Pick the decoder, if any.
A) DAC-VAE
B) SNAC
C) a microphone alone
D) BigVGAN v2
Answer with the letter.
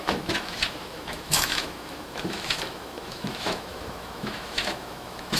A